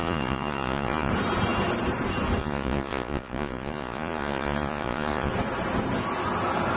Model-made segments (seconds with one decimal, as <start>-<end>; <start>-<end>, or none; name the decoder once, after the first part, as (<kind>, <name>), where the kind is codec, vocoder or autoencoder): 0.0-1.1 (vocoder, Vocos); 2.4-5.3